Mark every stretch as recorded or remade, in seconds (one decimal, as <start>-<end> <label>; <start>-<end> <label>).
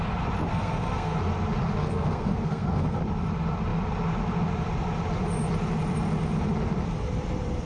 0.0-0.5 recorded; 0.5-1.2 remade; 1.2-1.8 recorded; 1.8-3.0 remade; 3.0-7.7 recorded